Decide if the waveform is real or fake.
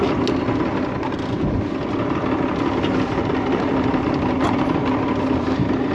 real